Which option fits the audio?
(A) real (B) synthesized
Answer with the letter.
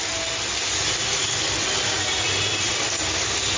A